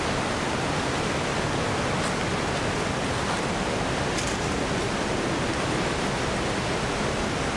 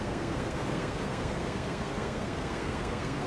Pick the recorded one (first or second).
first